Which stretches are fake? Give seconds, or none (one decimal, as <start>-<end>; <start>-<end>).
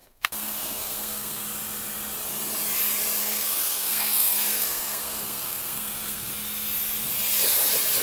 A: 0.0-1.4; 3.2-6.3